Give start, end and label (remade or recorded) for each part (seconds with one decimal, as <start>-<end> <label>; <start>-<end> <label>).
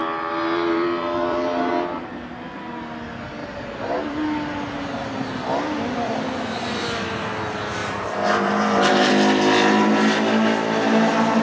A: 0.0-1.7 remade; 1.7-3.4 recorded; 3.4-4.1 remade; 4.1-7.8 recorded; 7.8-9.1 remade; 9.1-11.4 recorded